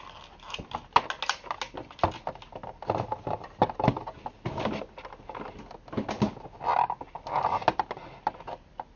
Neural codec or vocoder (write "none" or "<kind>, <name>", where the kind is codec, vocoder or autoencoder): none